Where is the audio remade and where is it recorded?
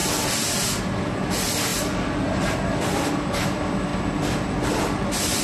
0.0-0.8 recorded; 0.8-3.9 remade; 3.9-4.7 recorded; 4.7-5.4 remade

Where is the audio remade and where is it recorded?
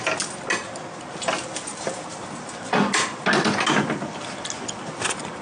0.0-1.7 recorded; 1.7-2.6 remade; 2.6-5.4 recorded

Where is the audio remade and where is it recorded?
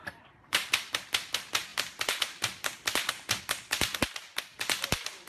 0.0-0.7 remade; 0.7-4.5 recorded; 4.5-5.3 remade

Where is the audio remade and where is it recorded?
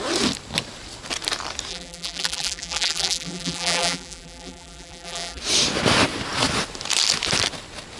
0.0-1.7 recorded; 1.7-5.4 remade; 5.4-8.0 recorded